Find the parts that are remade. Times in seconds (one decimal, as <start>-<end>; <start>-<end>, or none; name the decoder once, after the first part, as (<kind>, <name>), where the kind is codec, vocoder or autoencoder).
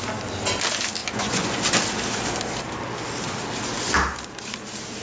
1.0-1.6 (vocoder, Vocos)